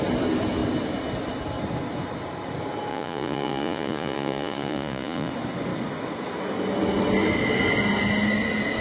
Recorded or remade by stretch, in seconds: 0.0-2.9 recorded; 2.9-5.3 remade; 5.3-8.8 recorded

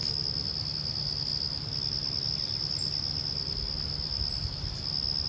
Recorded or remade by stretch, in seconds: 0.0-5.3 recorded

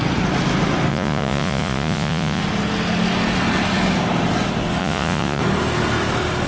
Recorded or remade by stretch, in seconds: 0.0-0.9 recorded; 0.9-2.4 remade; 2.4-4.8 recorded; 4.8-5.4 remade; 5.4-6.5 recorded

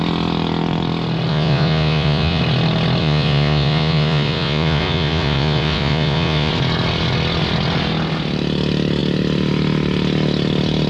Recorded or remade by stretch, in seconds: 0.0-1.3 recorded; 1.3-2.4 remade; 2.4-3.0 recorded; 3.0-6.5 remade; 6.5-10.9 recorded

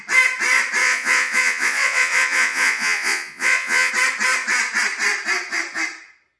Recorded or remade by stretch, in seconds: 0.0-0.8 recorded; 0.8-3.9 remade; 3.9-6.4 recorded

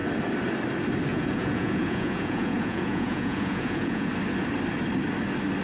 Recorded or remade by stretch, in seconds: 0.0-1.1 recorded; 1.1-4.1 remade; 4.1-5.6 recorded